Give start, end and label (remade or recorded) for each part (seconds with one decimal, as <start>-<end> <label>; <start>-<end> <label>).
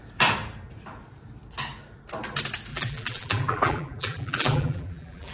0.0-2.7 recorded; 2.7-5.3 remade